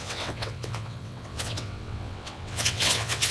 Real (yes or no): no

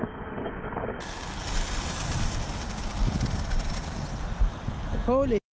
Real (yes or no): yes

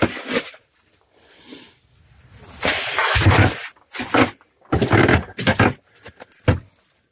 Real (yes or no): yes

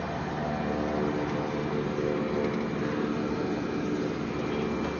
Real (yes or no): yes